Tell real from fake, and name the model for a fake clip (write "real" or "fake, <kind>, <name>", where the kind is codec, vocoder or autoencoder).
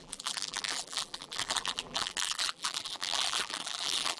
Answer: fake, vocoder, BigVGAN v2